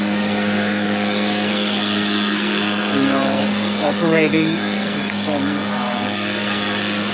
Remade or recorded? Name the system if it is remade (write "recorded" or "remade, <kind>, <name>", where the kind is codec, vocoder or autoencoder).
remade, codec, SNAC